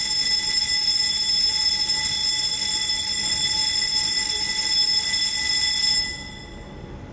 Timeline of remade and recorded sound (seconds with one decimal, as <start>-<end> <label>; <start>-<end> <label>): 0.0-7.1 recorded